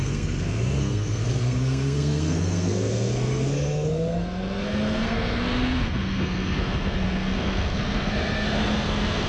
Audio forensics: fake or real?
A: fake